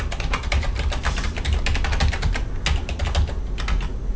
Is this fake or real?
real